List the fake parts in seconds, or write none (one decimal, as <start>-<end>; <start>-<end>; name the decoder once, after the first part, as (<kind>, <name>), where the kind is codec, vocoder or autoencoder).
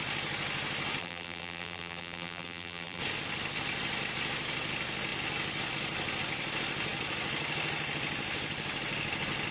1.0-3.0 (vocoder, BigVGAN v2)